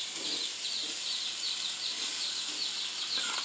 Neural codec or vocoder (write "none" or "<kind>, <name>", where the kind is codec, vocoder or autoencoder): vocoder, BigVGAN v2